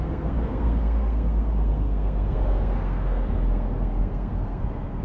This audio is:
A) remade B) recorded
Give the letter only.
A